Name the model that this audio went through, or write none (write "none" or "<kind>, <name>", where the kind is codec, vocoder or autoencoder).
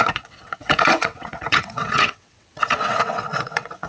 vocoder, WaveNeXt